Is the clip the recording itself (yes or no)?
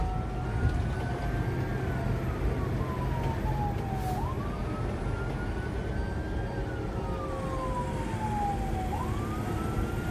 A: yes